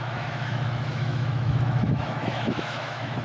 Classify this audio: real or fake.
fake